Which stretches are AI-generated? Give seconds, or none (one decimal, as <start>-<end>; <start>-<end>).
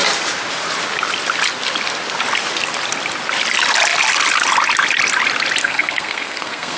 5.6-6.8